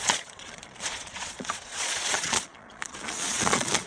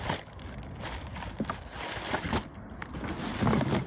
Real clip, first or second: second